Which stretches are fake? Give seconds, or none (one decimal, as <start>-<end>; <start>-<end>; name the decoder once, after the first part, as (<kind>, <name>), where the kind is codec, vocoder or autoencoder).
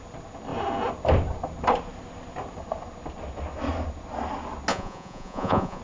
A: 4.7-5.8 (vocoder, Vocos)